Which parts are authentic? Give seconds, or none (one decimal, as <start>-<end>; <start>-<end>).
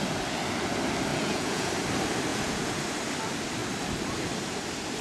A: 0.0-1.1; 1.7-2.3; 2.8-5.0